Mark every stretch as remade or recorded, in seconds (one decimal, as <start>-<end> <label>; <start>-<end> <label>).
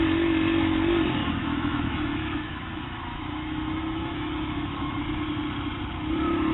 0.0-1.2 recorded; 1.2-5.0 remade; 5.0-6.5 recorded